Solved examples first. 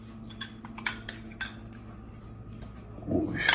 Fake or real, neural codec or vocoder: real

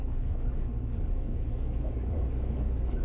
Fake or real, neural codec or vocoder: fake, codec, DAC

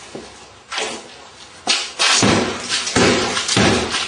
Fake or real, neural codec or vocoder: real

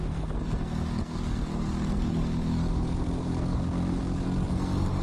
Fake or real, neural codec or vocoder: fake, codec, SNAC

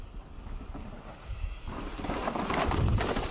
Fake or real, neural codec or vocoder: real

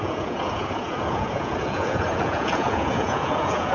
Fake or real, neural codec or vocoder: fake, vocoder, Vocos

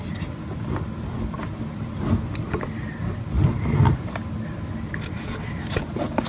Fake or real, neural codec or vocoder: real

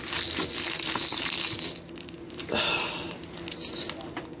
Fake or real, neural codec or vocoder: real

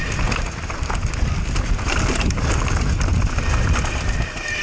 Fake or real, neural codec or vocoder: real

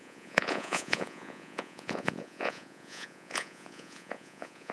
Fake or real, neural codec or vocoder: fake, vocoder, Vocos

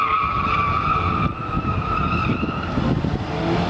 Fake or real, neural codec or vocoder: real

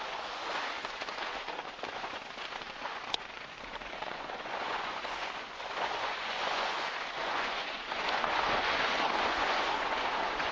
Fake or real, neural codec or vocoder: fake, vocoder, Vocos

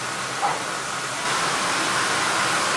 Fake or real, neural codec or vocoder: real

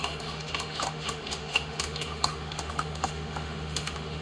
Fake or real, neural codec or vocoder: fake, autoencoder, DAC-VAE